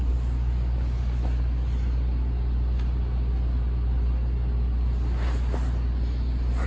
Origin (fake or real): real